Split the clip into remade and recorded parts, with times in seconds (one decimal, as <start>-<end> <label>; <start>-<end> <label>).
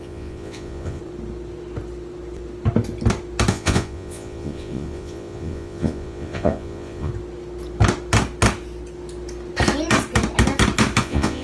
0.0-1.0 remade; 1.0-3.5 recorded; 3.5-7.1 remade; 7.1-11.0 recorded; 11.0-11.4 remade